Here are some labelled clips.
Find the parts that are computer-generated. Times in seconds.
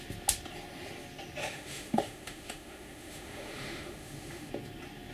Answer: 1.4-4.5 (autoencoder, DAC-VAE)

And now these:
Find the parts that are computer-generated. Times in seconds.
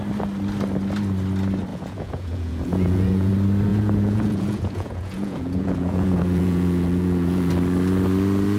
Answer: 1.7-3.3 (vocoder, Vocos); 3.7-7.5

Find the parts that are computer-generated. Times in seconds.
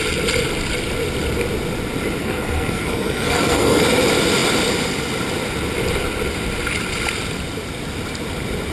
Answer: 2.2-3.8 (codec, SNAC)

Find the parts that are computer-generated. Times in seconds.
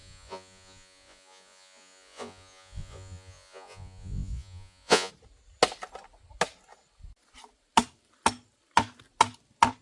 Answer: 0.0-5.1 (vocoder, Vocos)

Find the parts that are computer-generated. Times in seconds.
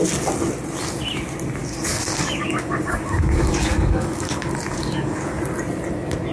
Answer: 1.6-5.4 (codec, DAC)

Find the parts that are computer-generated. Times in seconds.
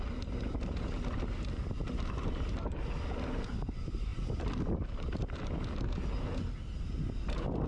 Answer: none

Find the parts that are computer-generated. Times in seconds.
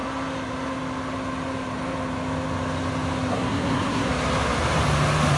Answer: 3.3-4.1 (codec, SNAC)